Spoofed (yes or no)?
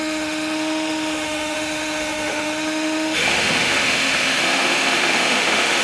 yes